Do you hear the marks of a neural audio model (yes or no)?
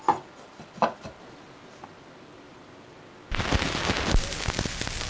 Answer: no